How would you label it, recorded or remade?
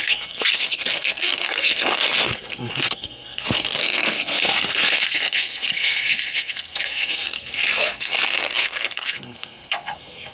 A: remade